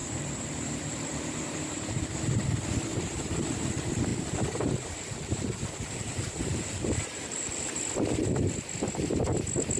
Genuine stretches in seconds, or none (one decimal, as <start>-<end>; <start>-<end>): 1.9-2.9; 3.5-4.1; 7.8-9.8